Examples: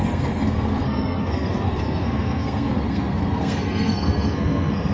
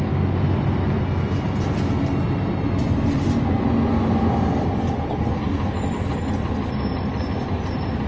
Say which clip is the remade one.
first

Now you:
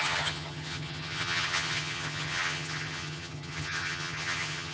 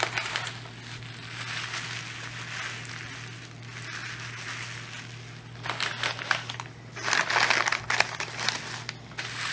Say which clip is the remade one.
first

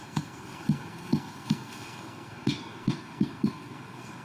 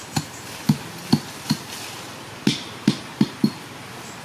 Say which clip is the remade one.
first